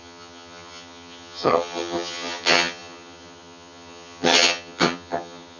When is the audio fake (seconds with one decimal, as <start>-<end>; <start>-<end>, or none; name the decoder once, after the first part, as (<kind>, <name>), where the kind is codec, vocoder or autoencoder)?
0.0-5.6 (vocoder, HiFi-GAN)